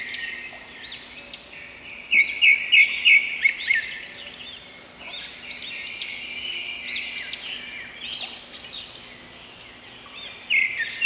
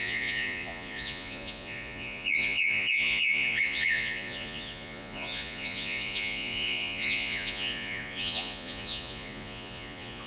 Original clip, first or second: first